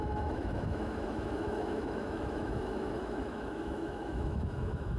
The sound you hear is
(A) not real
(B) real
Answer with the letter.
A